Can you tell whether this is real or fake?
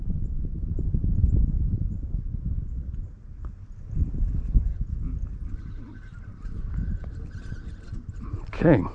real